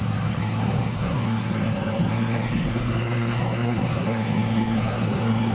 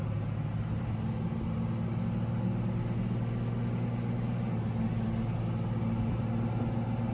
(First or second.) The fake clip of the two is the first